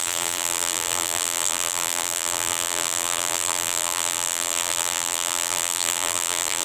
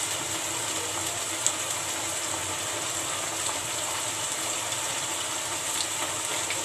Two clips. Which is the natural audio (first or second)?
second